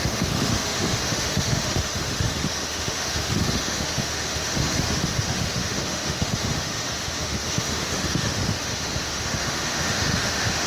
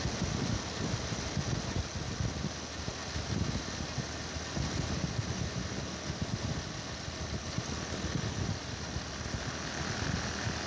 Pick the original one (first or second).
second